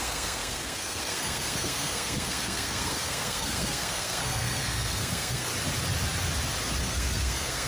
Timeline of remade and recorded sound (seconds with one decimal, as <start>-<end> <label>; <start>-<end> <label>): 0.0-5.5 remade; 5.5-6.8 recorded; 6.8-7.7 remade